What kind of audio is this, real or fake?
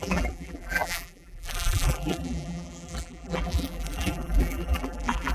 fake